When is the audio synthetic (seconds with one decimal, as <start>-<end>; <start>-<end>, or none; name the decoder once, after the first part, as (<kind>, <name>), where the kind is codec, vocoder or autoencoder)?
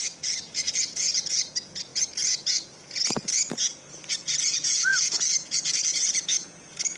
0.0-7.0 (vocoder, Vocos)